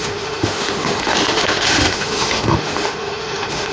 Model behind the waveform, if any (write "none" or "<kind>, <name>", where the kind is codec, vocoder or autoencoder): autoencoder, DAC-VAE